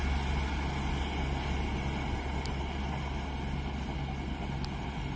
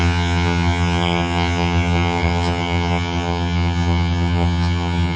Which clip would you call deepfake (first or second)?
second